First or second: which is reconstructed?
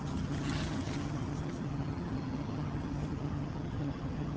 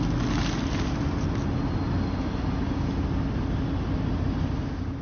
first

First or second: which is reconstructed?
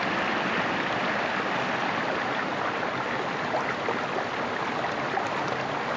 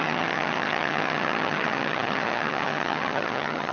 second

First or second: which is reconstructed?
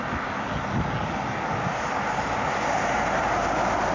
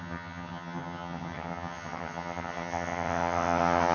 second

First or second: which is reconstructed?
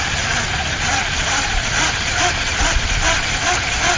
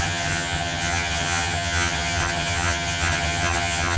second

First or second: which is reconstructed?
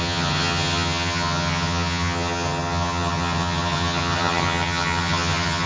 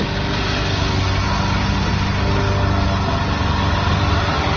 first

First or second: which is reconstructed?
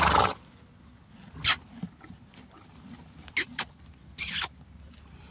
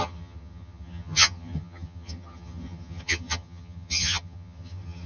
second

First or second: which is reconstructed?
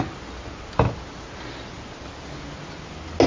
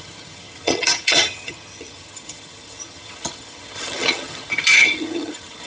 second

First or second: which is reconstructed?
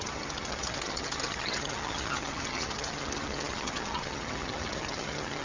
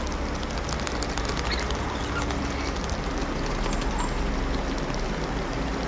first